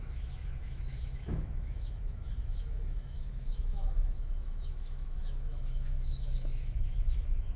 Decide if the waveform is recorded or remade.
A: remade